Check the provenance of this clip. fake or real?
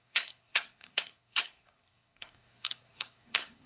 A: fake